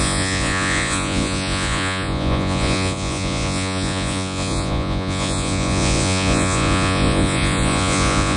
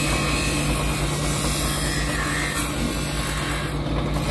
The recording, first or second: second